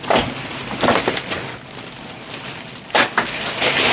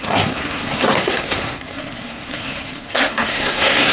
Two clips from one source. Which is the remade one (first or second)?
second